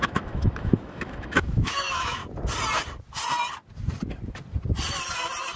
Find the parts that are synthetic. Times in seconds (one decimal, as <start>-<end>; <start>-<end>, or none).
0.0-2.2